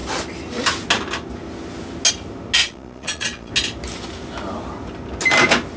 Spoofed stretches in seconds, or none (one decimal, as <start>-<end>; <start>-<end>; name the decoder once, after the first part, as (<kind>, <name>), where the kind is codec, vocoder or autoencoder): 2.6-3.5 (vocoder, Vocos)